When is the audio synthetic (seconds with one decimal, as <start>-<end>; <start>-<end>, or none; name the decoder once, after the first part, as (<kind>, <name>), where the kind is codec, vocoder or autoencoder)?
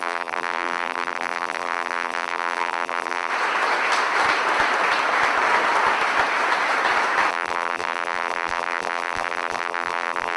0.0-3.3 (vocoder, BigVGAN v2); 7.3-10.4